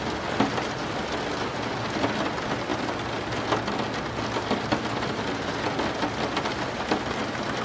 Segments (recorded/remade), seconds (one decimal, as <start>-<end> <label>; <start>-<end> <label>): 0.0-7.6 recorded